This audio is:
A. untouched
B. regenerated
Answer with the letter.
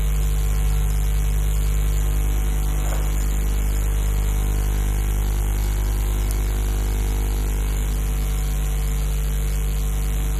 A